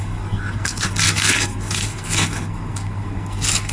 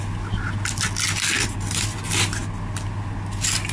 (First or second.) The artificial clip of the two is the first